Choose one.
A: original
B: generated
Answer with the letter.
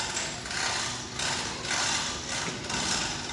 A